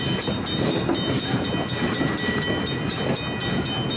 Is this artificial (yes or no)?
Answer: no